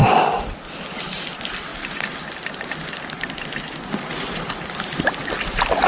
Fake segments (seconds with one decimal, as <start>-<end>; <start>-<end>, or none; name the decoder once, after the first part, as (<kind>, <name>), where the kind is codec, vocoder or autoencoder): none